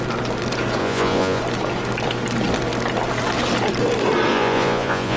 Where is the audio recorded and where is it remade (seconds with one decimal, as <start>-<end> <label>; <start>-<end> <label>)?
0.0-0.8 recorded; 0.8-1.4 remade; 1.4-4.3 recorded; 4.3-5.2 remade